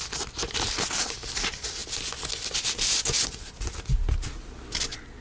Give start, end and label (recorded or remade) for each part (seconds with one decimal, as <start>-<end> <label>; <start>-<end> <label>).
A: 0.0-5.2 recorded